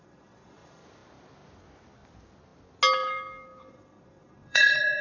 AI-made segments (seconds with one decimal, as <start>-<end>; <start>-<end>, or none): 0.0-0.8; 3.7-5.0